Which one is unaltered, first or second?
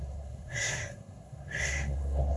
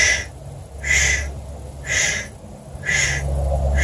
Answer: second